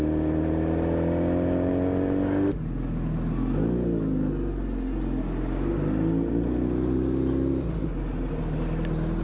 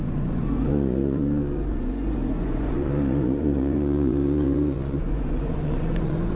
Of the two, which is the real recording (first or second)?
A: first